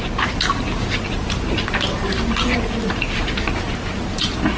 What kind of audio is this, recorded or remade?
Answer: recorded